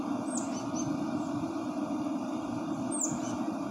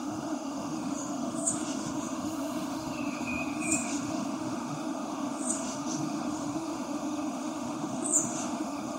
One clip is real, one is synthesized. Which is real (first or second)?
first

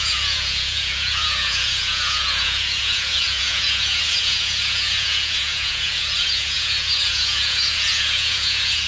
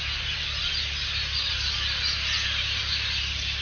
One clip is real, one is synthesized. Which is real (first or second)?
second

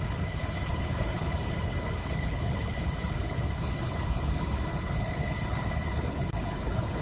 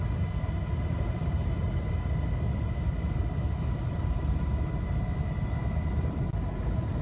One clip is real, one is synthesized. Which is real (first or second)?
second